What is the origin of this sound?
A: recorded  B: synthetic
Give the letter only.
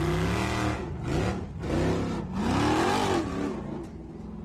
A